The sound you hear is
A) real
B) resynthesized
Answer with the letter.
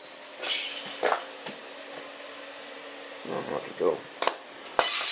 A